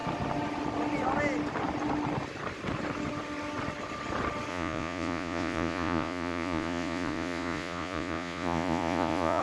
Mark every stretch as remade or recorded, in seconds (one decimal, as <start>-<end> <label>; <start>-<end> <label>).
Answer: 0.0-4.5 recorded; 4.5-9.4 remade